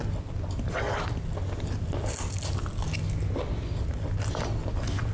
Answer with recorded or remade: recorded